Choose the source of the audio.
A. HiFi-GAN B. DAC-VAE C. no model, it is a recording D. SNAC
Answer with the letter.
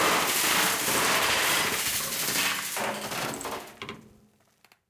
C